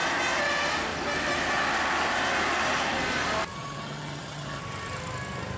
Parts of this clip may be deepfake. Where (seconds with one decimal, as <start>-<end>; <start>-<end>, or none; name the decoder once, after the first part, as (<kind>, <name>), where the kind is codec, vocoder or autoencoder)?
3.5-4.6 (vocoder, HiFi-GAN)

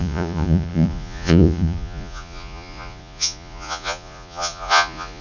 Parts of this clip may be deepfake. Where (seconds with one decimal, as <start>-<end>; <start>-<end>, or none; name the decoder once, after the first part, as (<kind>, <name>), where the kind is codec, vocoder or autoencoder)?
0.0-5.2 (vocoder, Vocos)

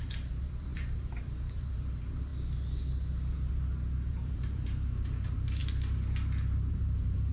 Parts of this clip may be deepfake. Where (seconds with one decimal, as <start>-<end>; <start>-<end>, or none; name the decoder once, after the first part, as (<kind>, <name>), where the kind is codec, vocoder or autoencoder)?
0.0-2.3 (vocoder, BigVGAN v2); 4.1-5.6; 6.7-7.3

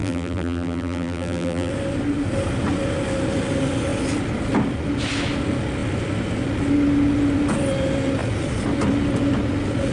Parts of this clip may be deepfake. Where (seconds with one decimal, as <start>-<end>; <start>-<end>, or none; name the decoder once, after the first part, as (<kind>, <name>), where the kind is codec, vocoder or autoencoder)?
0.0-1.7 (vocoder, BigVGAN v2)

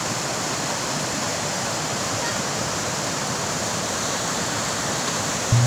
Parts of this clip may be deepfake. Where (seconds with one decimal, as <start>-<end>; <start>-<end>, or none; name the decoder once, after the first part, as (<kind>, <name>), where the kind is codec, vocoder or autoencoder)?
1.3-3.2 (vocoder, BigVGAN v2); 3.6-5.7

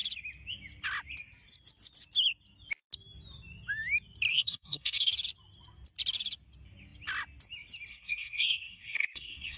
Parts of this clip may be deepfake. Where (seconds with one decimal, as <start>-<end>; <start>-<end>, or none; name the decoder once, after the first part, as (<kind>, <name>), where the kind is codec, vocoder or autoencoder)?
4.3-5.1 (codec, SNAC); 7.9-9.6